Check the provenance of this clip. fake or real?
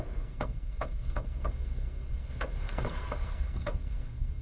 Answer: fake